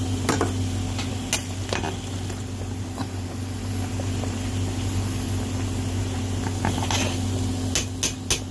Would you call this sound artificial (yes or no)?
no